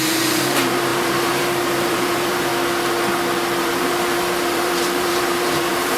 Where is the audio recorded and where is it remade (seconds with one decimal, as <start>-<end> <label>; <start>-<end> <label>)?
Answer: 0.0-2.5 remade; 2.5-3.6 recorded; 3.6-6.0 remade